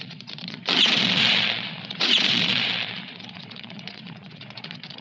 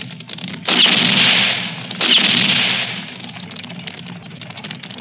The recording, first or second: second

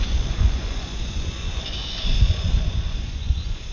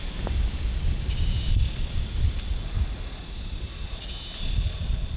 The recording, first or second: second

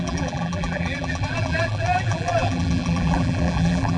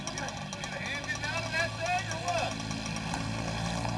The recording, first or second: second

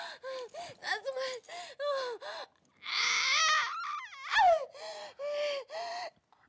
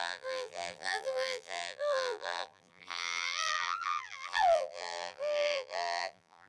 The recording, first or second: first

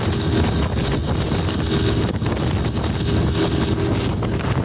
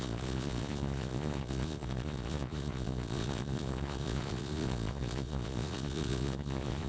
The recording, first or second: first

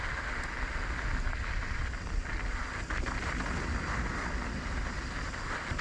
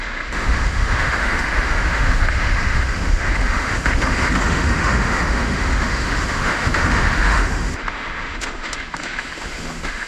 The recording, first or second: first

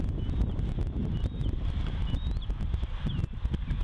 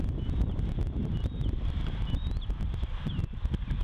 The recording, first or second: first